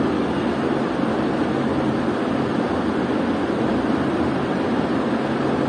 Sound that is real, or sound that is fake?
real